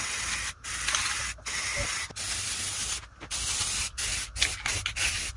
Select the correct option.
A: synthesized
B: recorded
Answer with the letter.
B